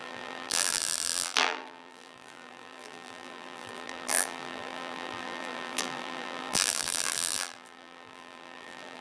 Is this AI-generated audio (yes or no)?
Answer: yes